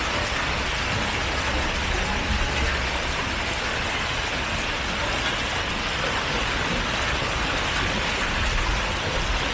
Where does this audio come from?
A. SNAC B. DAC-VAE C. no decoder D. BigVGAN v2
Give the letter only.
C